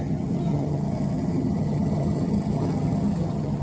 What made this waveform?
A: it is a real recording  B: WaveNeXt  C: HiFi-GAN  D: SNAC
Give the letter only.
C